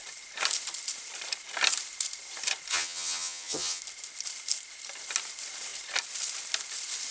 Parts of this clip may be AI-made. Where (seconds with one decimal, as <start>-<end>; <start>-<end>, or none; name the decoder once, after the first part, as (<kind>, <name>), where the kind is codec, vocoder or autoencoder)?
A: 2.7-3.8 (vocoder, HiFi-GAN)